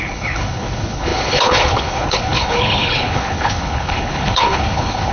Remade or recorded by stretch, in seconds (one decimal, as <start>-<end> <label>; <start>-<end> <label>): 0.0-5.1 remade